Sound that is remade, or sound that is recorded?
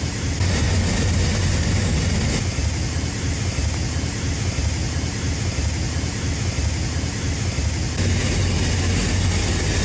recorded